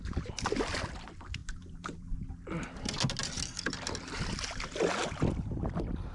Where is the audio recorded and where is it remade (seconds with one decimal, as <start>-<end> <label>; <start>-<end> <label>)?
0.0-1.4 recorded; 1.4-2.3 remade; 2.3-6.1 recorded